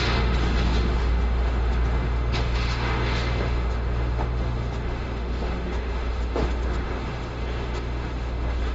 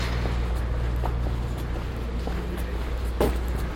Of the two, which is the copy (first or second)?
first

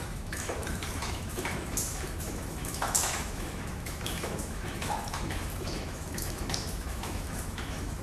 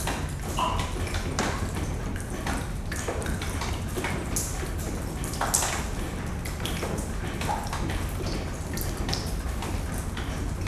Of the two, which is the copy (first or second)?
first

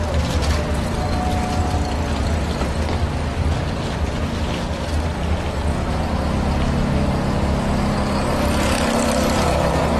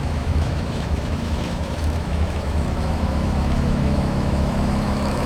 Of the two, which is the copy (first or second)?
second